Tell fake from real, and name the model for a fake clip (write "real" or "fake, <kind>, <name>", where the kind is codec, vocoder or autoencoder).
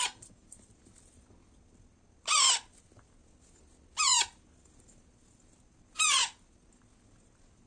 real